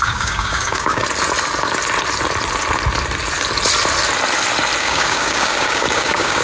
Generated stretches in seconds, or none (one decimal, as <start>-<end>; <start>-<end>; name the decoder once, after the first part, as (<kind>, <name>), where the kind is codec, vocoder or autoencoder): 0.0-1.0 (codec, DAC); 4.8-6.4